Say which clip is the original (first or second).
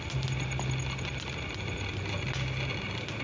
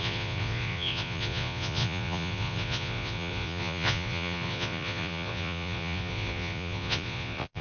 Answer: first